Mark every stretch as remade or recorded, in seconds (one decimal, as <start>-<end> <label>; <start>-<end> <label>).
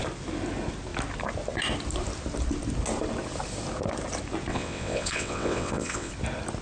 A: 0.0-4.5 recorded; 4.5-6.1 remade; 6.1-6.6 recorded